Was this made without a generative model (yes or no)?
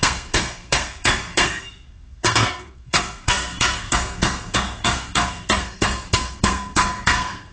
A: no